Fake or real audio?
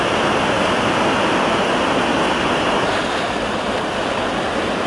real